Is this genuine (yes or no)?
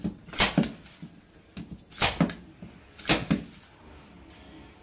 yes